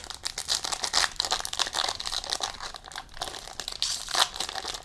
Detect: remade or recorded recorded